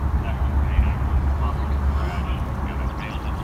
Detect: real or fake real